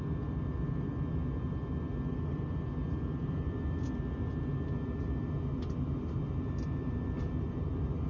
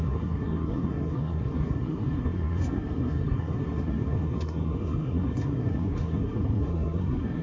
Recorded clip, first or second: first